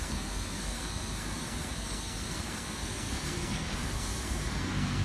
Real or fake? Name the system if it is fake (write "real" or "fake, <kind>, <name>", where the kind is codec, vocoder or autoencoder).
fake, codec, SNAC